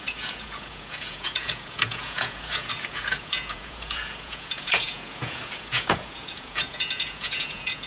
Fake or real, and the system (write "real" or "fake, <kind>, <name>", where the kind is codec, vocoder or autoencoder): fake, vocoder, Vocos